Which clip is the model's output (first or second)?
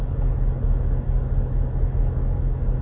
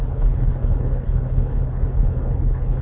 second